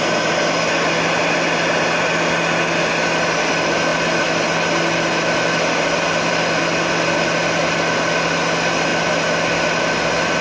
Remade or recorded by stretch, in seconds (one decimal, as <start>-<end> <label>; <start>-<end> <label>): 0.0-10.4 recorded